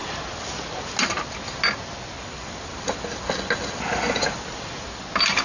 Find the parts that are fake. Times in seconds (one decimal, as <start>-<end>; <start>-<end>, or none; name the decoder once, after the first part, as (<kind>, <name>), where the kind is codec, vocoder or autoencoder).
none